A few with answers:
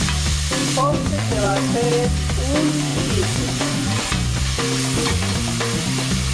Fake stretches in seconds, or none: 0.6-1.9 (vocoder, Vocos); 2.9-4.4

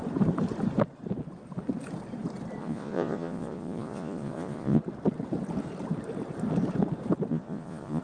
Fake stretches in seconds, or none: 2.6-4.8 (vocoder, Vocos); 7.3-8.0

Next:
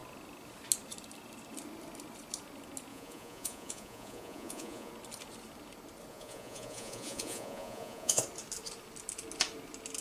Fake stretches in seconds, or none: 2.9-4.9 (vocoder, Vocos); 6.1-8.2

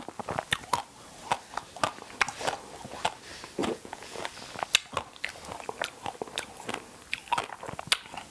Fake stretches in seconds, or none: 3.6-4.2 (vocoder, Vocos)